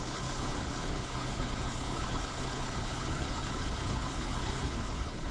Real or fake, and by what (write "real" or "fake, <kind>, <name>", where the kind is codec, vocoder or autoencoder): fake, codec, HILCodec